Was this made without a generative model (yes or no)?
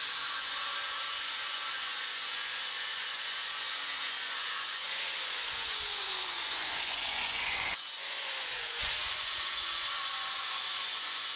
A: no